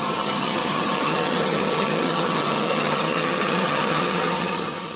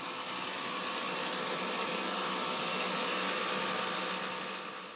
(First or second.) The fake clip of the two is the first